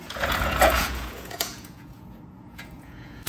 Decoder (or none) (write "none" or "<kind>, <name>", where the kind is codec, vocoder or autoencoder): vocoder, Vocos